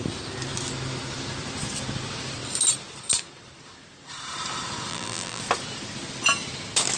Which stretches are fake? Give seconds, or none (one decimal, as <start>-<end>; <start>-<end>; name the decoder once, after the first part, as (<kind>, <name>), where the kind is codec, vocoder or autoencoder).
4.9-5.4 (vocoder, BigVGAN v2)